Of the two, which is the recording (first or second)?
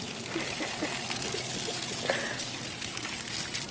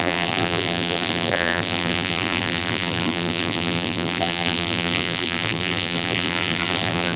first